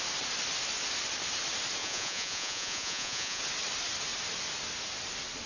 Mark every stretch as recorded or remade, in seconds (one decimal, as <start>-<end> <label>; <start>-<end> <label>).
0.0-1.8 recorded; 1.8-3.4 remade; 3.4-5.5 recorded